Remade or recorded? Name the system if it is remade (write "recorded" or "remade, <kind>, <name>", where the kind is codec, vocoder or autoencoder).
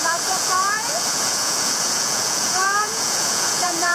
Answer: remade, vocoder, Vocos